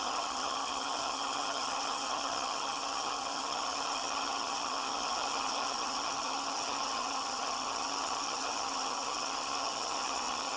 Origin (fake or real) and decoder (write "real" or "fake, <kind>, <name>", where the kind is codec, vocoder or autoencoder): fake, vocoder, HiFi-GAN